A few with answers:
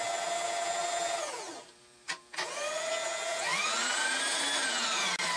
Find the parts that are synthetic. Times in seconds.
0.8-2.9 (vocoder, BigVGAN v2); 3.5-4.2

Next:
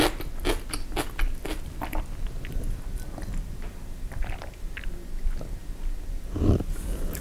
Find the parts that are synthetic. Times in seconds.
none

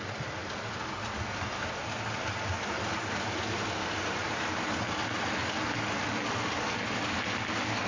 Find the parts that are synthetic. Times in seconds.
none

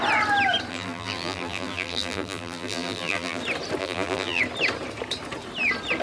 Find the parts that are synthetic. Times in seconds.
0.7-3.4 (vocoder, BigVGAN v2); 3.8-4.4

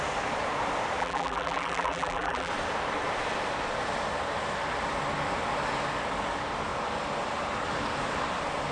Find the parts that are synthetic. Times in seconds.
1.0-2.5 (vocoder, BigVGAN v2)

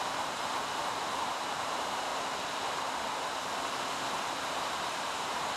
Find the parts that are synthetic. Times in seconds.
0.0-2.1 (vocoder, BigVGAN v2); 4.2-5.6

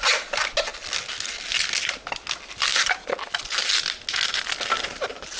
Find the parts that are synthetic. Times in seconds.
2.7-3.7 (vocoder, BigVGAN v2)